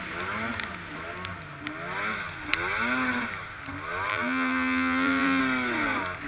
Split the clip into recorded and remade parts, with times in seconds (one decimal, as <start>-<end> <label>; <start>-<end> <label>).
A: 0.0-4.1 recorded; 4.1-5.4 remade; 5.4-6.3 recorded